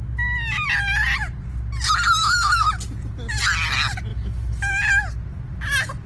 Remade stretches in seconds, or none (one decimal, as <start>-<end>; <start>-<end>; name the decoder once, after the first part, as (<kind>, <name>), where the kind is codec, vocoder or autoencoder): 2.2-2.7 (autoencoder, DAC-VAE); 4.1-4.8